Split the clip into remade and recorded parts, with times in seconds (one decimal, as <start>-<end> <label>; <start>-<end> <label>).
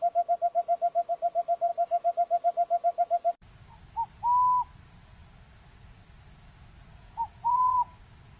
0.0-6.9 recorded; 6.9-7.9 remade; 7.9-8.4 recorded